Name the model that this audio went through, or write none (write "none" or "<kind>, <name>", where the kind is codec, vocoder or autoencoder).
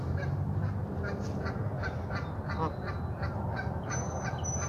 none